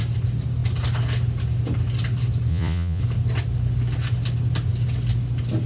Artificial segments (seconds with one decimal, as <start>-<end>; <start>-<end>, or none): 2.5-3.0